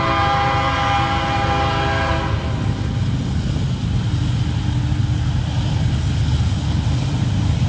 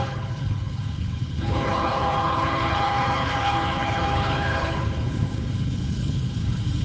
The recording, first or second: first